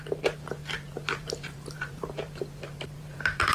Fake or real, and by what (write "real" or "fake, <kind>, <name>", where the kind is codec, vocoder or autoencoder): fake, vocoder, BigVGAN v2